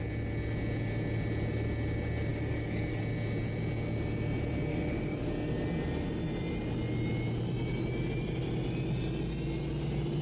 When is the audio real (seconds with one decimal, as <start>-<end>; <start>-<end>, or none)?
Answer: 0.0-2.3; 3.0-4.7; 5.3-10.2